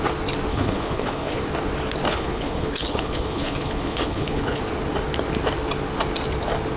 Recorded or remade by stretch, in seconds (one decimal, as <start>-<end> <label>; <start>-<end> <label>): 0.0-0.5 recorded; 0.5-1.4 remade; 1.4-2.1 recorded; 2.1-4.6 remade; 4.6-6.8 recorded

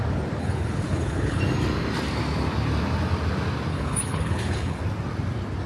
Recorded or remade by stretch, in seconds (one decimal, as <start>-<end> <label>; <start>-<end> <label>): 0.0-0.4 recorded; 0.4-1.4 remade; 1.4-3.7 recorded; 3.7-4.8 remade; 4.8-5.7 recorded